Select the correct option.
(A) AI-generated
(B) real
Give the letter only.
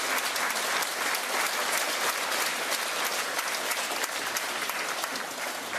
B